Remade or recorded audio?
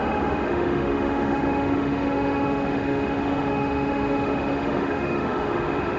remade